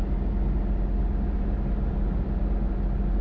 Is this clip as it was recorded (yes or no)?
yes